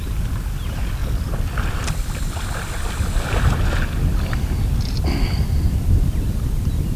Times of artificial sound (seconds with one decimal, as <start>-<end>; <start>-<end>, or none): none